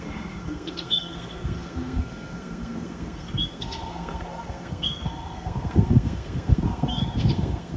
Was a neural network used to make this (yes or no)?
yes